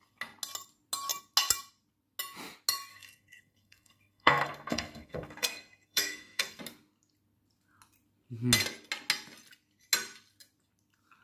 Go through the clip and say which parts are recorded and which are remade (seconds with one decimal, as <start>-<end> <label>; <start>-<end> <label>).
0.0-2.9 recorded; 2.9-6.6 remade; 6.6-11.2 recorded